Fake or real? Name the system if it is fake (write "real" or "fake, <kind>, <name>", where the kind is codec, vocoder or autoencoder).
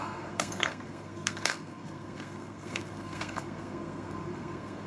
fake, codec, SNAC